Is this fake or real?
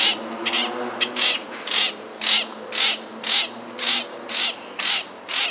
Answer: real